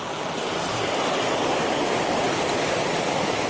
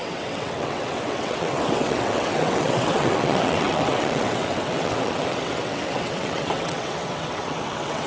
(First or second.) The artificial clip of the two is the second